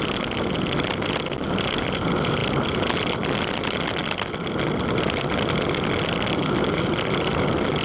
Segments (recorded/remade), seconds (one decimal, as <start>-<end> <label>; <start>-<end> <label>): 0.0-7.8 recorded